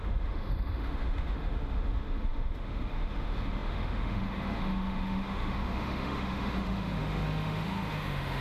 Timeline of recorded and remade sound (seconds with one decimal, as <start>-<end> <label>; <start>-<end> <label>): 0.0-8.4 remade